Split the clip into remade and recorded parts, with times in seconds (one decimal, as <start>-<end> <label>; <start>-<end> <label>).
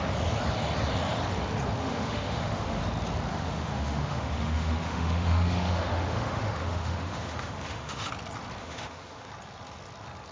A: 0.0-1.8 recorded; 1.8-2.8 remade; 2.8-3.3 recorded; 3.3-8.1 remade; 8.1-8.6 recorded; 8.6-9.3 remade; 9.3-10.3 recorded